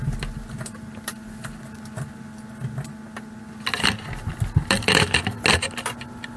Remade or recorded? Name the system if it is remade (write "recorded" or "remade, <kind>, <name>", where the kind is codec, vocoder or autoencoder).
recorded